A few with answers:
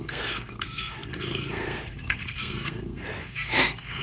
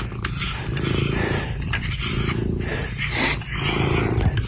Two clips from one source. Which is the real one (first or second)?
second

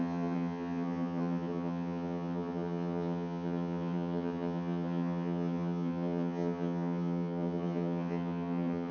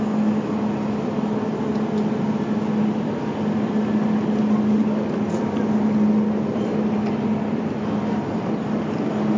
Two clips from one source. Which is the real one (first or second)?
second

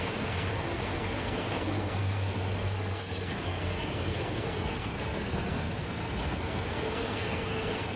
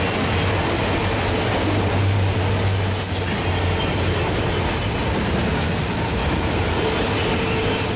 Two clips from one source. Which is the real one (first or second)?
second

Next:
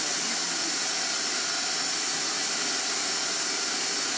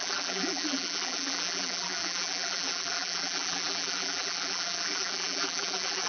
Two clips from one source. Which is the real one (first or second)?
first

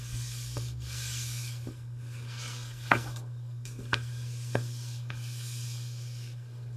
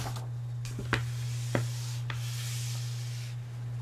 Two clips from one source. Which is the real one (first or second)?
second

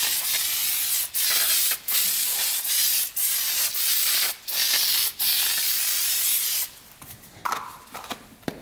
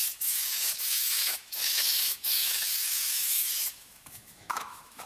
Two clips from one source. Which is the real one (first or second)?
first